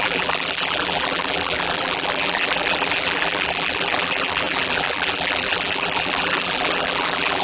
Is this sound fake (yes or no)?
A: yes